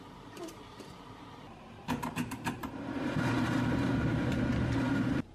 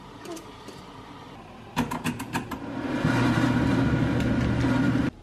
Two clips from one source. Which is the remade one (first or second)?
first